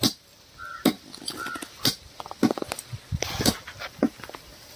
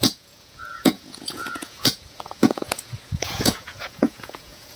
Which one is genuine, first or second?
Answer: first